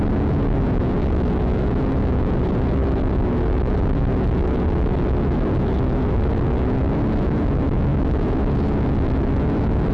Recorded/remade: remade